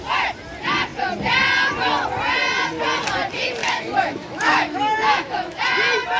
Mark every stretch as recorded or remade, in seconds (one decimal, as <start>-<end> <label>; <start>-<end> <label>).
0.0-3.6 recorded; 3.6-5.6 remade; 5.6-6.2 recorded